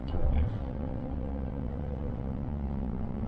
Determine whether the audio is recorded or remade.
remade